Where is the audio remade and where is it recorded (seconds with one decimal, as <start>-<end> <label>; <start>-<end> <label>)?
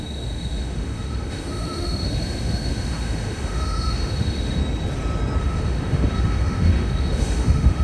0.0-4.6 remade; 4.6-5.4 recorded; 5.4-7.8 remade